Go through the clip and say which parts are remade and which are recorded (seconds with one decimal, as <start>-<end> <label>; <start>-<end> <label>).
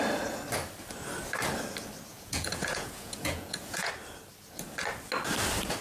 0.0-2.1 recorded; 2.1-3.9 remade; 3.9-5.8 recorded